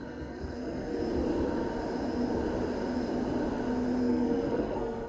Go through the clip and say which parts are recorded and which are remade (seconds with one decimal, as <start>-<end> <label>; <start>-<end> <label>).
0.0-0.9 remade; 0.9-4.0 recorded; 4.0-5.1 remade